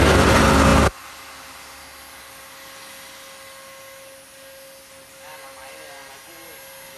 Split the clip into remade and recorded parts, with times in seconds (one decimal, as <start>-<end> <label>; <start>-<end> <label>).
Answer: 0.0-7.0 recorded